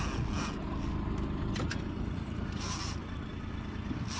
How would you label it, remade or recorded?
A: recorded